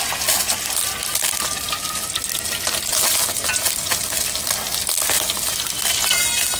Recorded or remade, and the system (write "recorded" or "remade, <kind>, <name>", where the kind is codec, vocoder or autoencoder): recorded